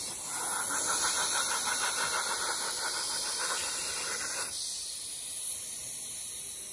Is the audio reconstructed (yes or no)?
no